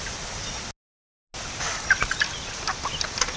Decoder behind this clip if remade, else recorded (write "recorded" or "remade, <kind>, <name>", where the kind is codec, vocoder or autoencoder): recorded